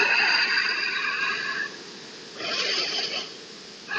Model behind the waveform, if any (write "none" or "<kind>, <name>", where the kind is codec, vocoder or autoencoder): none